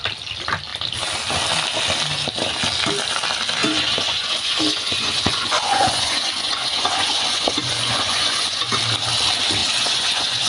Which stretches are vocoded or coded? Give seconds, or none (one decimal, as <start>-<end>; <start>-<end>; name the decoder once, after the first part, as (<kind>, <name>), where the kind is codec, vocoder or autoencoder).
3.6-8.8 (vocoder, Vocos); 9.6-10.5